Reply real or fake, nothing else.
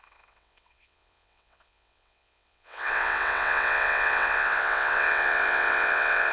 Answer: fake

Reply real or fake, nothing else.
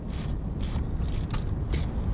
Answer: real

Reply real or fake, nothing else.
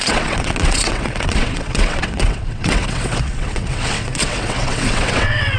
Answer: fake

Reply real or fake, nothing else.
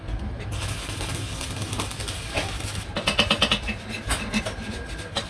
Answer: real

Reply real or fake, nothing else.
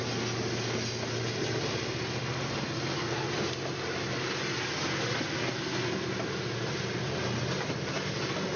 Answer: real